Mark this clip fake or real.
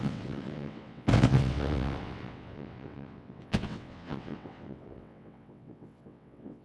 fake